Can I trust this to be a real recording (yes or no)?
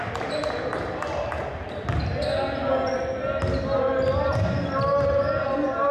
yes